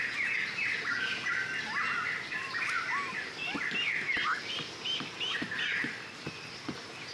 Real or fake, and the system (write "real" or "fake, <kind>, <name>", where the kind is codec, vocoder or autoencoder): real